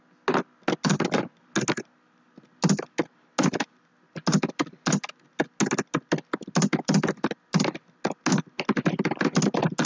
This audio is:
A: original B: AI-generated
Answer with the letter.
A